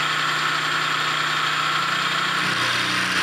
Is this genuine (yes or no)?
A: yes